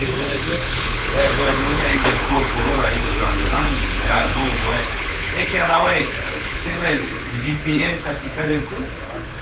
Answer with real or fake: fake